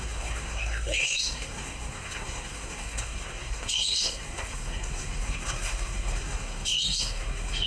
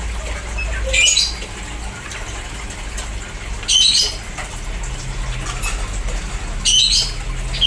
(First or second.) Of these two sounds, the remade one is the first